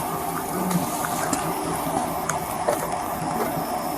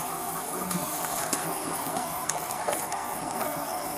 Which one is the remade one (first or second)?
second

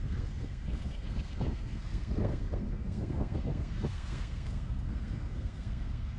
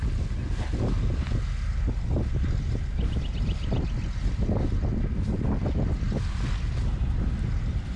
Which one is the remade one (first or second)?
first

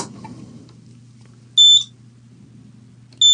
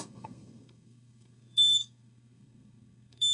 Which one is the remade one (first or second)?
second